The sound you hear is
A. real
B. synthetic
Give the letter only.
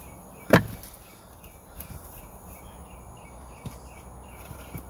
A